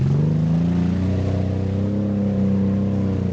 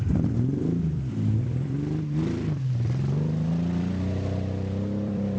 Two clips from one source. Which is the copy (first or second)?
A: second